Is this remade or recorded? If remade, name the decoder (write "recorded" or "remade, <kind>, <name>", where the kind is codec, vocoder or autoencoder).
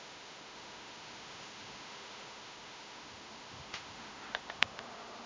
remade, autoencoder, DAC-VAE